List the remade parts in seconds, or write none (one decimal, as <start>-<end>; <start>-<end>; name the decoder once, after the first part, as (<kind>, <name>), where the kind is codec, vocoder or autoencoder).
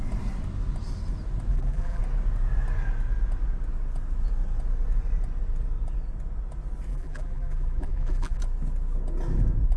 1.5-2.0 (vocoder, BigVGAN v2); 6.9-8.4